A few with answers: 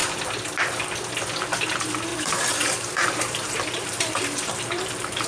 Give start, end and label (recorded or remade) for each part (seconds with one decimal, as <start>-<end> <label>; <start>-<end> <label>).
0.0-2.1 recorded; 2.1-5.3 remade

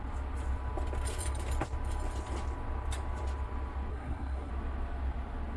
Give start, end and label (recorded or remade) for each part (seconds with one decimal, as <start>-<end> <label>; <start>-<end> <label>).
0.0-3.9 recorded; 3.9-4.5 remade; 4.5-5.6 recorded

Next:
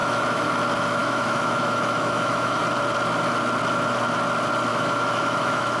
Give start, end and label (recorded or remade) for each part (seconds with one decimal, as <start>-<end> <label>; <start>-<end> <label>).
0.0-0.5 remade; 0.5-1.0 recorded; 1.0-2.6 remade; 2.6-4.7 recorded; 4.7-5.8 remade

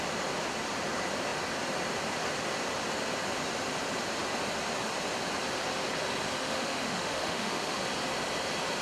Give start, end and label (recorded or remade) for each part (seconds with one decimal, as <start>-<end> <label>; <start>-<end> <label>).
0.0-6.4 recorded; 6.4-7.8 remade; 7.8-8.8 recorded

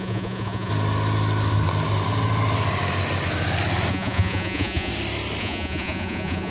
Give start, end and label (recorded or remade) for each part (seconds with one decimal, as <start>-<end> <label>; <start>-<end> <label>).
0.0-0.7 remade; 0.7-3.9 recorded; 3.9-4.9 remade; 4.9-5.4 recorded; 5.4-6.5 remade